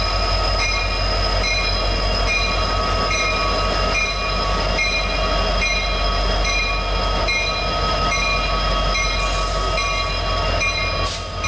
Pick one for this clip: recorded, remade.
recorded